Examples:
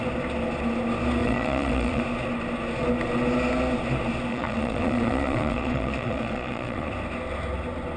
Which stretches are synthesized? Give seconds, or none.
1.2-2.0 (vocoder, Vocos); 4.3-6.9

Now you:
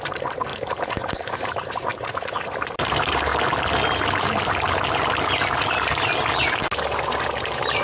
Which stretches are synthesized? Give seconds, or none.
0.0-3.3 (vocoder, BigVGAN v2); 7.0-7.8